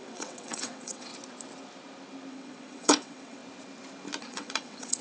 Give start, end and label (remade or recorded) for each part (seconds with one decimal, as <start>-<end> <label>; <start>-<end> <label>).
0.0-1.1 remade; 1.1-2.3 recorded; 2.3-3.4 remade; 3.4-4.2 recorded; 4.2-5.0 remade